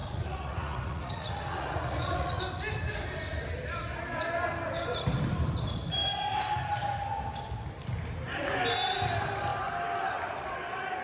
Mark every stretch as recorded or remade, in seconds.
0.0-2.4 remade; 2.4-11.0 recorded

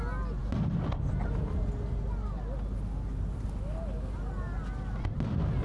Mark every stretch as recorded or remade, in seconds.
0.0-5.6 recorded

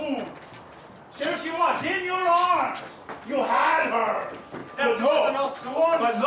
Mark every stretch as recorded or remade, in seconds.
0.0-6.3 recorded

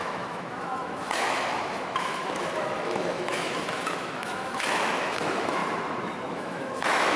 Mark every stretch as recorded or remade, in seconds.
0.0-5.6 remade; 5.6-6.3 recorded; 6.3-7.2 remade

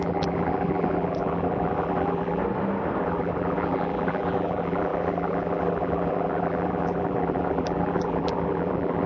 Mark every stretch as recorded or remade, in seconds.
0.0-2.4 remade; 2.4-3.0 recorded; 3.0-9.1 remade

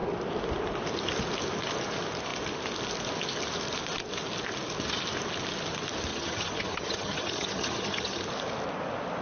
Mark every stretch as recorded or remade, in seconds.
0.0-6.1 recorded; 6.1-8.2 remade; 8.2-9.2 recorded

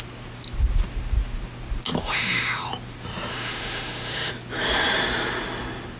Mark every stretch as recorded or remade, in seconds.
0.0-2.0 recorded; 2.0-2.7 remade; 2.7-3.3 recorded; 3.3-4.3 remade; 4.3-6.0 recorded